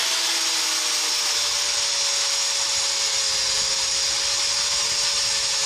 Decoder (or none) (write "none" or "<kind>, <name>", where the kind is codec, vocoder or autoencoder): none